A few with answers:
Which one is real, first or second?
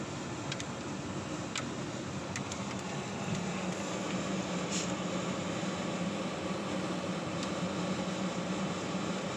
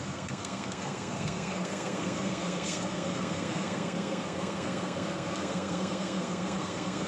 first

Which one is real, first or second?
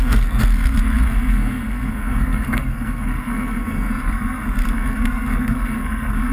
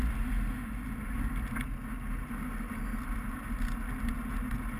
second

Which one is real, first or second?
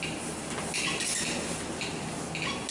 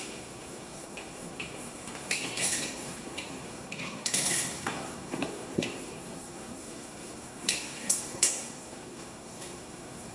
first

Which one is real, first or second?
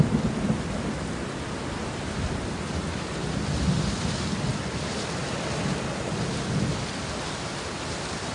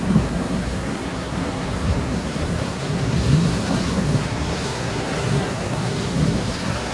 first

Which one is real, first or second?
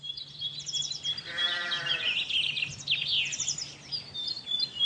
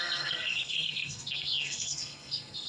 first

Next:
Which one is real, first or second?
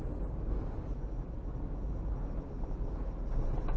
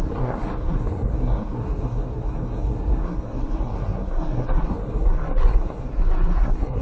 first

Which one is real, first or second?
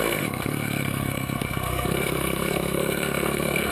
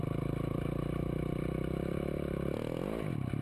second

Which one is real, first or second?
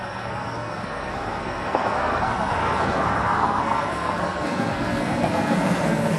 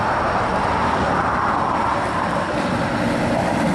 second